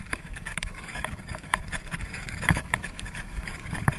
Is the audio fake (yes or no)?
yes